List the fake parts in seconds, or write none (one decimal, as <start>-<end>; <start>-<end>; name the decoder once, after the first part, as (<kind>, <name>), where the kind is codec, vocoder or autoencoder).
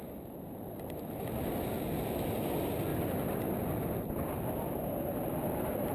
none